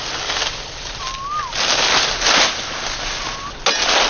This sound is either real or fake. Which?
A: real